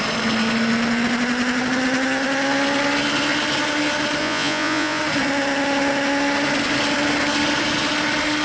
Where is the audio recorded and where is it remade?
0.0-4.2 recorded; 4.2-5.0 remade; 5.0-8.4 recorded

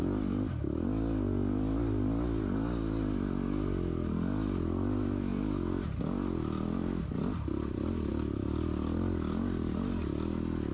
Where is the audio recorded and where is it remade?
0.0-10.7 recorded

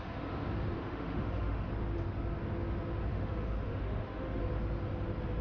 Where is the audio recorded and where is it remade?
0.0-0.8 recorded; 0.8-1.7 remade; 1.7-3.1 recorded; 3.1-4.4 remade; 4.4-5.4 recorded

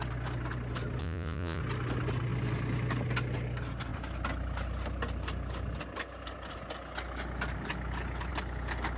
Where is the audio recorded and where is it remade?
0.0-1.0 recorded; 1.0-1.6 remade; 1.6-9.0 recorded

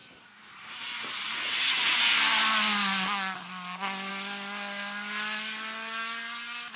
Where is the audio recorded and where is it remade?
0.0-6.8 recorded

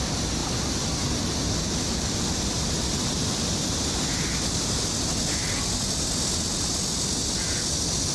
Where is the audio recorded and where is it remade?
0.0-0.4 recorded; 0.4-4.5 remade; 4.5-8.1 recorded

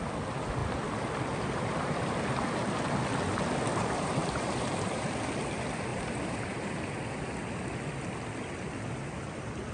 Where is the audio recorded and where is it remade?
0.0-3.7 recorded; 3.7-5.0 remade; 5.0-5.9 recorded; 5.9-6.7 remade; 6.7-9.7 recorded